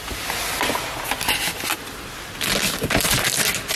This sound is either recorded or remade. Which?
recorded